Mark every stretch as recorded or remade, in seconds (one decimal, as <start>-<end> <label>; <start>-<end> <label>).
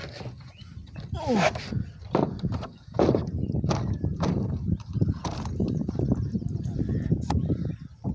0.0-2.6 recorded; 2.6-8.1 remade